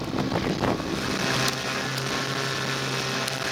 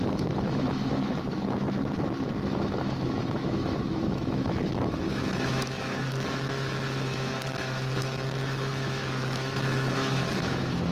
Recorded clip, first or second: first